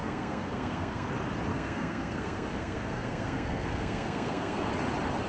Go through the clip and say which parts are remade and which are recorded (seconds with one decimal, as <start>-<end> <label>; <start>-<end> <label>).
0.0-1.1 remade; 1.1-1.5 recorded; 1.5-4.7 remade; 4.7-5.3 recorded